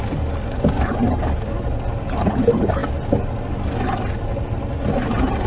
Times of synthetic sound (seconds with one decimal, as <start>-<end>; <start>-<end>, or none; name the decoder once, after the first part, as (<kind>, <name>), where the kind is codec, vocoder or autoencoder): none